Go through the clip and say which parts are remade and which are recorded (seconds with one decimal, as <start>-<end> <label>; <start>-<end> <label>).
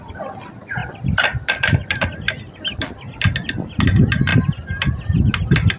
0.0-5.8 recorded